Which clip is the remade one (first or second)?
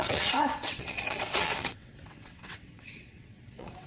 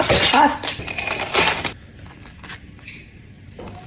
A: first